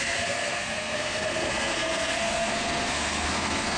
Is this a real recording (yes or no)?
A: no